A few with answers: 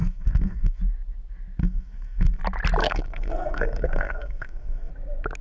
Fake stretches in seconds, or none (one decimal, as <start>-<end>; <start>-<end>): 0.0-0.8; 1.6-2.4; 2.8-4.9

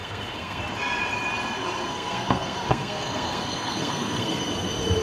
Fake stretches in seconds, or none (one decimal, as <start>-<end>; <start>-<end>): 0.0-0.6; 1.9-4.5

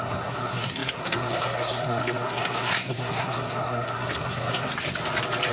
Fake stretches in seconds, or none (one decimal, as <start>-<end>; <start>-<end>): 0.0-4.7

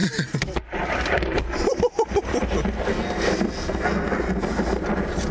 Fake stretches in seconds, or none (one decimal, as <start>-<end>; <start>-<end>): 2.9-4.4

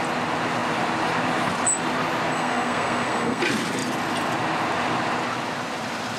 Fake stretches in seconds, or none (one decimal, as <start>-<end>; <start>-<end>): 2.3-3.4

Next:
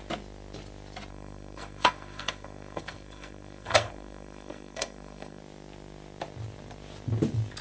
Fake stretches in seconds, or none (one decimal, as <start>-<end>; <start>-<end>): 1.1-5.4

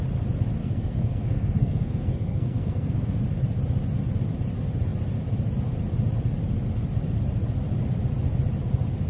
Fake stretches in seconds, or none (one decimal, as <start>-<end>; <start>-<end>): 0.6-3.2

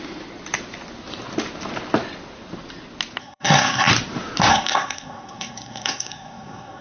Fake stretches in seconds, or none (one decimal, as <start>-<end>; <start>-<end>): 3.2-3.9; 4.5-6.8